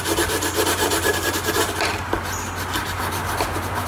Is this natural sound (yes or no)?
yes